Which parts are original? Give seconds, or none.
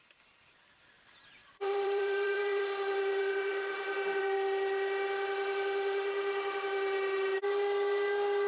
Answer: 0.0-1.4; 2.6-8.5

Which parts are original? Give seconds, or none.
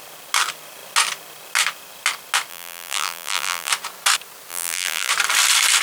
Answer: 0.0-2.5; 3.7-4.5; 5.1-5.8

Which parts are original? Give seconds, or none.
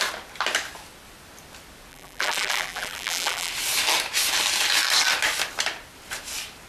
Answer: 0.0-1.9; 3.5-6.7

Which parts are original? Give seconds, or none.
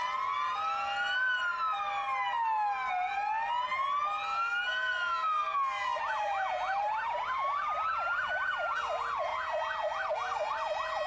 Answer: 0.0-11.1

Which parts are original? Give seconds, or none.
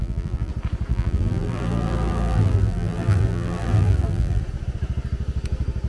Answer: 0.5-0.9; 4.4-5.9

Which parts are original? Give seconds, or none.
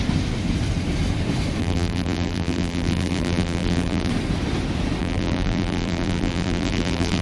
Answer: 0.0-1.6; 4.1-5.0